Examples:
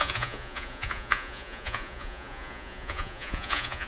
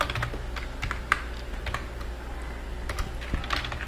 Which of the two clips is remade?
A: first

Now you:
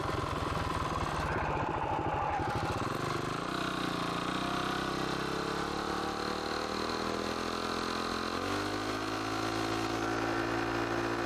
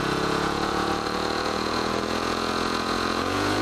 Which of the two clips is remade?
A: second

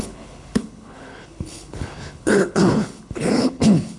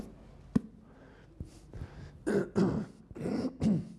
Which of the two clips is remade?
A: first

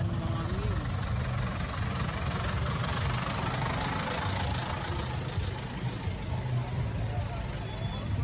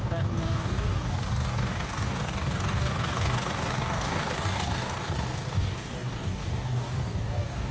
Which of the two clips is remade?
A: second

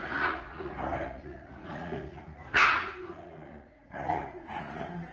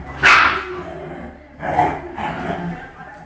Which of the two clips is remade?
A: first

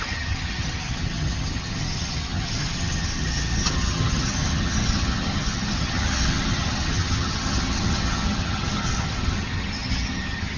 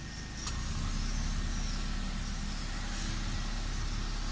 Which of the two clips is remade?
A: first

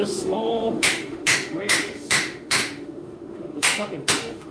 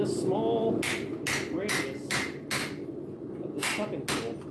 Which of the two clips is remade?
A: first